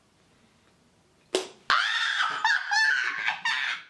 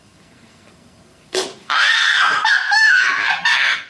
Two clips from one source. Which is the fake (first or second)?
second